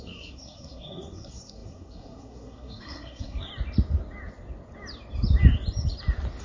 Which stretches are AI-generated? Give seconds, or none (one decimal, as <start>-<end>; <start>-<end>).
0.0-3.5